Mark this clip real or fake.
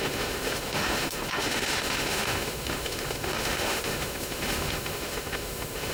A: fake